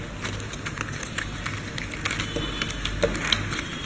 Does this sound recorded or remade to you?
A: recorded